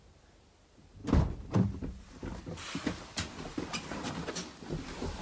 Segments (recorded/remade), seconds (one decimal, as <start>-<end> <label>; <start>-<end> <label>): 0.0-5.2 recorded

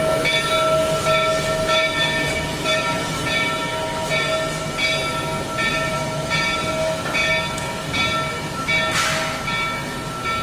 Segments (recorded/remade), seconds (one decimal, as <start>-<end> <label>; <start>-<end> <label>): 0.0-2.5 recorded; 2.5-3.3 remade; 3.3-5.7 recorded; 5.7-6.7 remade; 6.7-10.4 recorded

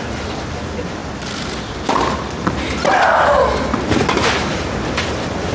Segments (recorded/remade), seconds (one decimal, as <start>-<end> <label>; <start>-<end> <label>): 0.0-5.5 recorded

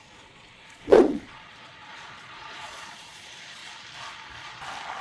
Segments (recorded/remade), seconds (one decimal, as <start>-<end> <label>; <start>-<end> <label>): 0.0-3.6 remade; 3.6-5.0 recorded

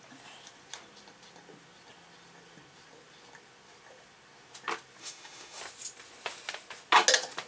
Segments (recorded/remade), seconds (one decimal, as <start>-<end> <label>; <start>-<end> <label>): 0.0-5.0 recorded; 5.0-5.6 remade; 5.6-7.5 recorded